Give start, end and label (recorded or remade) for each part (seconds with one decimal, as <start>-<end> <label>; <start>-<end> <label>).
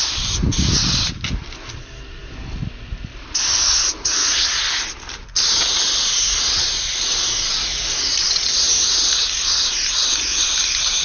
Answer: 0.0-8.2 recorded; 8.2-8.7 remade; 8.7-11.0 recorded